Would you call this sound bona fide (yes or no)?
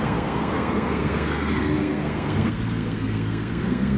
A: no